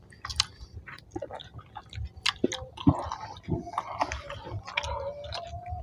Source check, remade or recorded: recorded